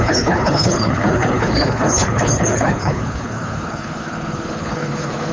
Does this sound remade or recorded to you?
remade